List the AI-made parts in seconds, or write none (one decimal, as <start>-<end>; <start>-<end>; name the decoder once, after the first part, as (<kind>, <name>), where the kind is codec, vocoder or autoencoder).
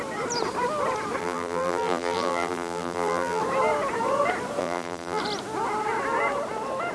1.2-3.4 (vocoder, BigVGAN v2); 4.6-5.2